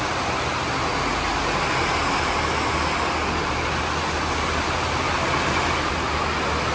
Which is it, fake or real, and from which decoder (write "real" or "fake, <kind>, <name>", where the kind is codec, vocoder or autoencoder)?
real